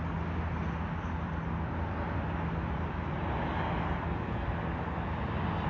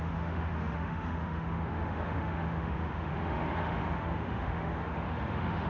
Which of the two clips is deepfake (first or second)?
second